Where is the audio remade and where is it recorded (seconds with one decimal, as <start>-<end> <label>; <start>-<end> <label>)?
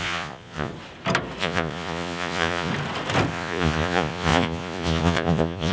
0.0-0.7 remade; 0.7-1.4 recorded; 1.4-2.7 remade; 2.7-3.3 recorded; 3.3-5.7 remade